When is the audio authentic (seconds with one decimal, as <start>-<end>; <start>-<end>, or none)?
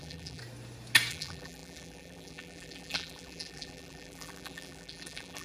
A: 0.4-1.1